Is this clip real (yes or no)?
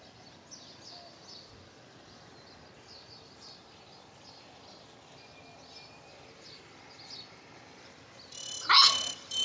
yes